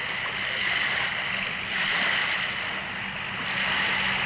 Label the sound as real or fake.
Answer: real